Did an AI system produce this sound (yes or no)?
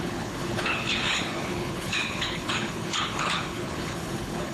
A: yes